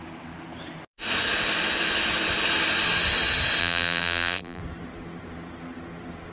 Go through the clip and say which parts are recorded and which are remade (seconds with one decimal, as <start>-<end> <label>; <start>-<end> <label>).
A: 0.0-3.6 recorded; 3.6-4.6 remade; 4.6-6.3 recorded